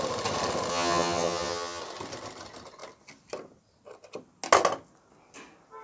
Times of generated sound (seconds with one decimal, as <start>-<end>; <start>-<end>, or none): 0.7-1.8